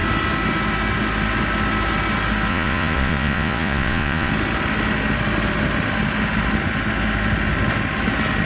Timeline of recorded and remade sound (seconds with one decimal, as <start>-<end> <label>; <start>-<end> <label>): 0.0-2.5 recorded; 2.5-4.3 remade; 4.3-8.5 recorded

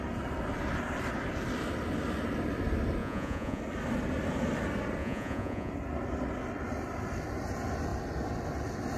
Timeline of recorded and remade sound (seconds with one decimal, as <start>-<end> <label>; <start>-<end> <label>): 0.0-3.0 recorded; 3.0-3.6 remade; 3.6-5.0 recorded; 5.0-5.7 remade; 5.7-9.0 recorded

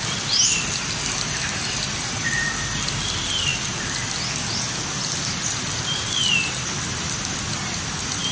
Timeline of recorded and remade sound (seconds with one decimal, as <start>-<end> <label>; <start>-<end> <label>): 0.0-8.3 recorded

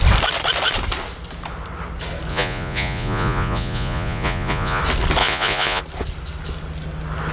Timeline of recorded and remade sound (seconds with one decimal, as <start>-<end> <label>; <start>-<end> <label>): 0.0-2.3 recorded; 2.3-4.8 remade; 4.8-5.2 recorded; 5.2-5.8 remade; 5.8-7.3 recorded

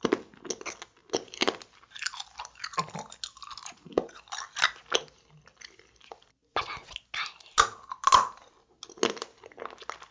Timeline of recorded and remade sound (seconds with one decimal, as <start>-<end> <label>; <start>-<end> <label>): 0.0-3.6 recorded; 3.6-4.2 remade; 4.2-10.1 recorded

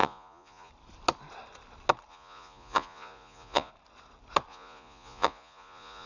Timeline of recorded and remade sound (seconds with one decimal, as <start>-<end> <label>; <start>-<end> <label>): 0.0-0.7 remade; 0.7-2.1 recorded; 2.1-3.7 remade; 3.7-4.5 recorded; 4.5-6.1 remade

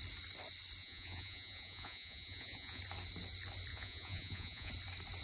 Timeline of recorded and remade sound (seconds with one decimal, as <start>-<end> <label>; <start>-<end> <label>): 0.0-0.8 recorded; 0.8-2.8 remade; 2.8-3.7 recorded; 3.7-4.7 remade; 4.7-5.2 recorded

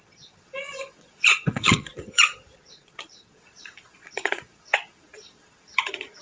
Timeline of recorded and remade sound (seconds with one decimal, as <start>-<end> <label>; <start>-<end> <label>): 0.0-6.2 remade